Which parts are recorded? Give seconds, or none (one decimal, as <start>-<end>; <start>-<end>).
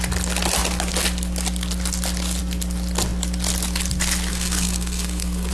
0.0-4.3